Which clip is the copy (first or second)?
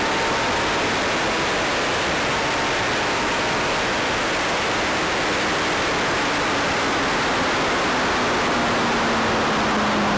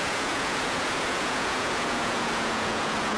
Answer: second